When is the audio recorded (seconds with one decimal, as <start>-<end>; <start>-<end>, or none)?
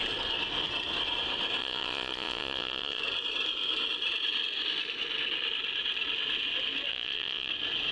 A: 0.0-1.6; 3.0-6.9; 7.5-7.9